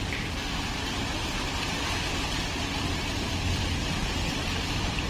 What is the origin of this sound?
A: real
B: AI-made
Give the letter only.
A